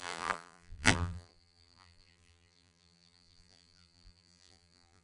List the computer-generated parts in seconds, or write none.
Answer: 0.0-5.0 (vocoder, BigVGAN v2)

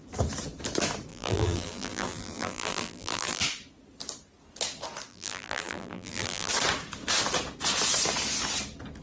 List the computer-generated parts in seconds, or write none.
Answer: 1.1-3.4 (vocoder, BigVGAN v2); 5.1-6.5

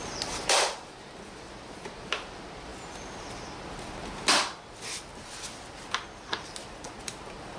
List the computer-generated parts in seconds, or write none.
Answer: 0.0-2.7 (vocoder, BigVGAN v2); 7.0-7.6

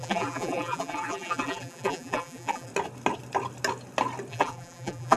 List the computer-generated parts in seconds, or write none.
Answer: 0.0-2.7 (vocoder, BigVGAN v2); 4.3-5.2